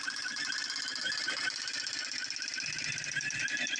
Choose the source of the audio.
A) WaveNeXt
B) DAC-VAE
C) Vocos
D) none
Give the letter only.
D